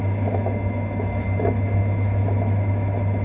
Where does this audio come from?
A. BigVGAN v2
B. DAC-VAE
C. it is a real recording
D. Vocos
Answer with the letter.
B